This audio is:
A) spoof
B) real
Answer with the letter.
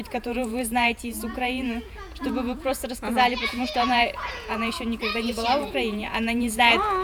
A